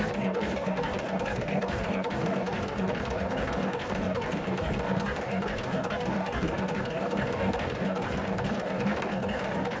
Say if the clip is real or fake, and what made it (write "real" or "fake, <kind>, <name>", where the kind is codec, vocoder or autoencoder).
fake, codec, DAC